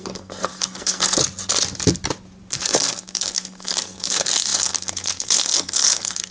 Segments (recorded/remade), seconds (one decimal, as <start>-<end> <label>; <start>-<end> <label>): 0.0-1.2 remade; 1.2-2.5 recorded; 2.5-6.3 remade

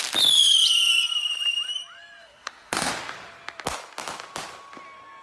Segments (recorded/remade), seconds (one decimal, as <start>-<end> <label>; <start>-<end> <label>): 0.0-2.2 recorded; 2.2-2.9 remade; 2.9-5.2 recorded

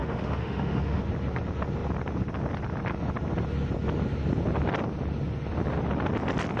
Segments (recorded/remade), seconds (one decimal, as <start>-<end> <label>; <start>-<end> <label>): 0.0-1.0 remade; 1.0-6.6 recorded

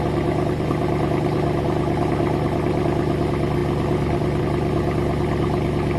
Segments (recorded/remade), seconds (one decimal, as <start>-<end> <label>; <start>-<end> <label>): 0.0-6.0 recorded

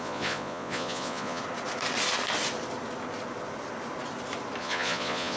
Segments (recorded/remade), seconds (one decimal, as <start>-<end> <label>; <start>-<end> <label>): 0.0-1.4 remade; 1.4-4.6 recorded; 4.6-5.4 remade

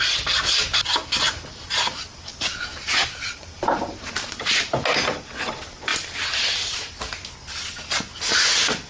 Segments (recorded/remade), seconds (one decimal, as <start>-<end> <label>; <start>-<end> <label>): 0.0-2.3 recorded; 2.3-4.8 remade; 4.8-5.9 recorded; 5.9-6.9 remade; 6.9-8.9 recorded

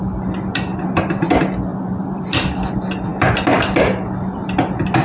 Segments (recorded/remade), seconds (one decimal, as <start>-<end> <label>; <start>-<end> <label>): 0.0-0.7 recorded; 0.7-1.2 remade; 1.2-1.7 recorded; 1.7-2.4 remade; 2.4-3.1 recorded; 3.1-3.9 remade; 3.9-5.0 recorded

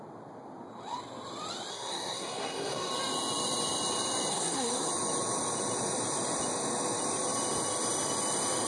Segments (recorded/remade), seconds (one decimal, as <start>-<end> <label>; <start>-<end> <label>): 0.0-1.7 recorded; 1.7-2.9 remade; 2.9-4.3 recorded; 4.3-4.9 remade; 4.9-8.7 recorded